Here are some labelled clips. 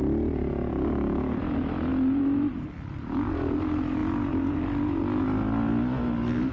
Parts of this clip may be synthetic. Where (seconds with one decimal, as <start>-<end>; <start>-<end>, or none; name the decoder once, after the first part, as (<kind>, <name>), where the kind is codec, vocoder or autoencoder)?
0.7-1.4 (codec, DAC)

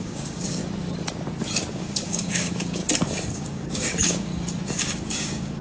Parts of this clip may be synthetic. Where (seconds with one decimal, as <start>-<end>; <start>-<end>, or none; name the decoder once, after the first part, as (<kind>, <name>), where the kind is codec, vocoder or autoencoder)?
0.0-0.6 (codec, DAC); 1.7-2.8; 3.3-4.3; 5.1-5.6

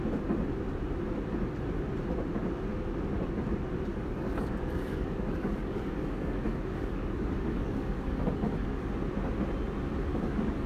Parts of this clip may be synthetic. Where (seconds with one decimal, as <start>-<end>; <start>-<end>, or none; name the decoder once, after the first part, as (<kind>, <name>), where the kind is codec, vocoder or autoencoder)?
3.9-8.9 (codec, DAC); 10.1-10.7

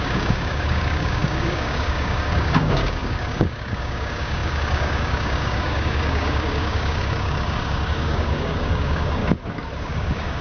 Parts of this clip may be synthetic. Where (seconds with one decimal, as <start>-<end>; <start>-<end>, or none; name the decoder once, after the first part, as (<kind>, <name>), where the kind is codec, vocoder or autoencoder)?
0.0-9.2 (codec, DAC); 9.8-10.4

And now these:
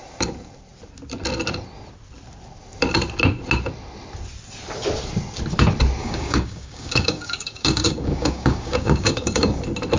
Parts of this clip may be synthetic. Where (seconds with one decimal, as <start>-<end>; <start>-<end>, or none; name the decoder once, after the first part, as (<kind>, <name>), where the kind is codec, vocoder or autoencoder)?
6.0-9.6 (codec, DAC)